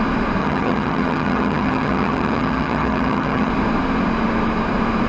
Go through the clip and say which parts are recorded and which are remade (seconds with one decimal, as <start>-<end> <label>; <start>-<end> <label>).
0.0-0.4 recorded; 0.4-3.5 remade; 3.5-5.1 recorded